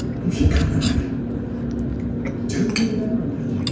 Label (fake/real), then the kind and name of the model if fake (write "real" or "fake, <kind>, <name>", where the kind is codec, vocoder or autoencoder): real